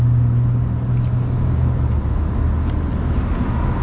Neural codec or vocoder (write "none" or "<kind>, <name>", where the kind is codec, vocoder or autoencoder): none